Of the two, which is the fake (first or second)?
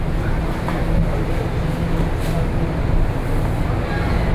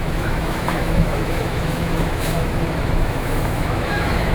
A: second